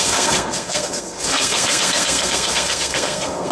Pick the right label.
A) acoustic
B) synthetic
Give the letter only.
B